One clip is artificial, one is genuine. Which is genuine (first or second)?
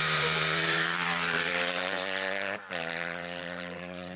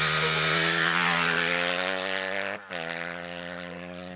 second